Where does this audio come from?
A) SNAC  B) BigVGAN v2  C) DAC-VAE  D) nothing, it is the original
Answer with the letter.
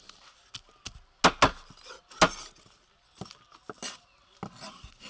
D